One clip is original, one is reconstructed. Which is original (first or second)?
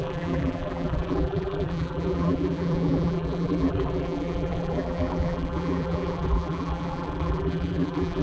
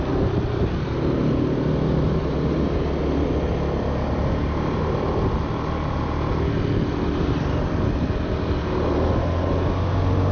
second